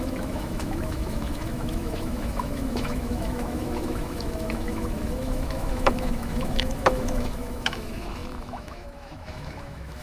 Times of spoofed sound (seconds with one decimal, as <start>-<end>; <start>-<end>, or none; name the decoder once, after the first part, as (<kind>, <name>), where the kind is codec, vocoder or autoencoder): 0.0-10.0 (autoencoder, DAC-VAE)